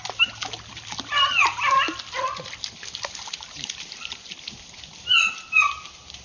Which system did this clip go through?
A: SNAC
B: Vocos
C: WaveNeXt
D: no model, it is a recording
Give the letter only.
D